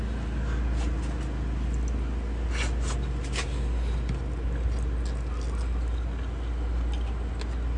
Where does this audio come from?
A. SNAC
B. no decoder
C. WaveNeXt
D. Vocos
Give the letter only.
B